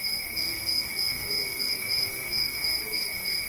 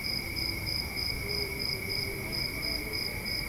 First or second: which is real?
second